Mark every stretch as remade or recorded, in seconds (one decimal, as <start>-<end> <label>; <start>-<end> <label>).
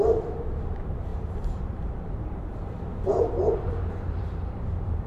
0.0-5.1 remade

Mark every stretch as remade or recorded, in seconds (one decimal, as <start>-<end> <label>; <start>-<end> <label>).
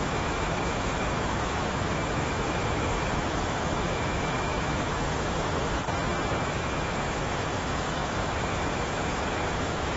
0.0-10.0 remade